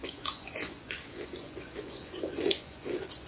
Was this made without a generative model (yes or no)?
no